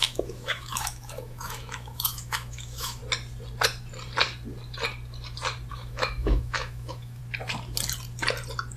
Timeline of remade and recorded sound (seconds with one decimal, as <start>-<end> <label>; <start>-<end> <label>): 0.0-3.0 remade; 3.0-5.7 recorded; 5.7-7.2 remade; 7.2-8.8 recorded